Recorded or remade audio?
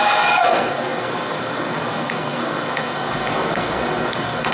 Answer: remade